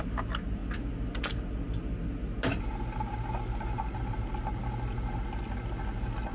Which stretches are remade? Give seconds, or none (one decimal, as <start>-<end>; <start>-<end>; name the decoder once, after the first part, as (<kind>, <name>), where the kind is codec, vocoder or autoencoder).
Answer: none